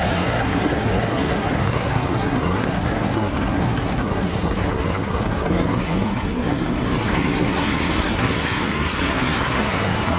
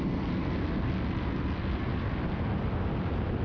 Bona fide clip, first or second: second